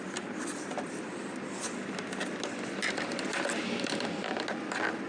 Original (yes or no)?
yes